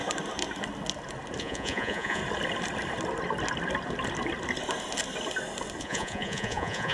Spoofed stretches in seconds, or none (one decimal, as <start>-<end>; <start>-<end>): 1.4-2.2; 5.8-6.9